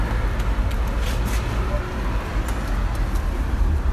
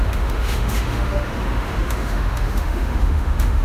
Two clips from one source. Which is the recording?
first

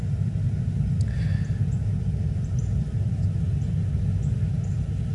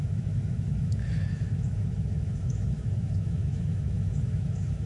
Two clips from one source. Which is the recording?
first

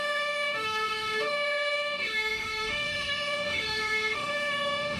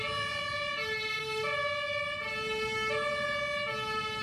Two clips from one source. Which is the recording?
second